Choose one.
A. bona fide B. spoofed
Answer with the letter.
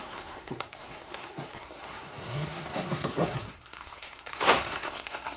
B